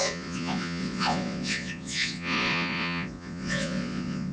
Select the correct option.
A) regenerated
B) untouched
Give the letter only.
A